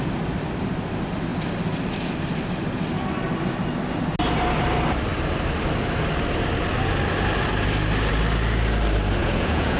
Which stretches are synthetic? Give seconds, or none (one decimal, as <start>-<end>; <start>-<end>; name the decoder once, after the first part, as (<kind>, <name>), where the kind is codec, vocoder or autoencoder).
9.2-9.8 (vocoder, Vocos)